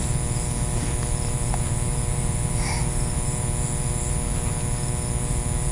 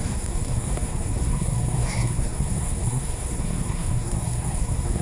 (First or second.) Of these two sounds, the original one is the first